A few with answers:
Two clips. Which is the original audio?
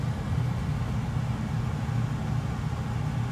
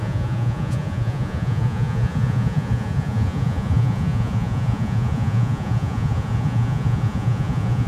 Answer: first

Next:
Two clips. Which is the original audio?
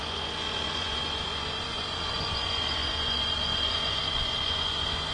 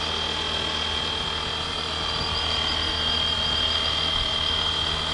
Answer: second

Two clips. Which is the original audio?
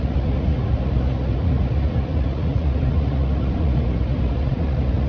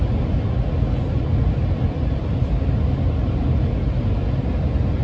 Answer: second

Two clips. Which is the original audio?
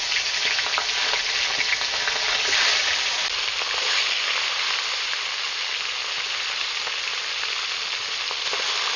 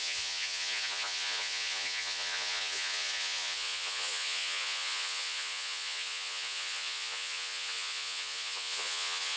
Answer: first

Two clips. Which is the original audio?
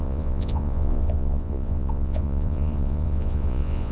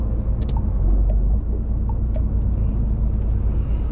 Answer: second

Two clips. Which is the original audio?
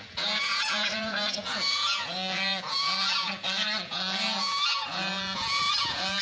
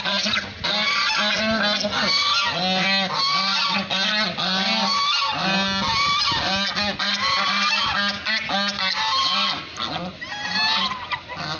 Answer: second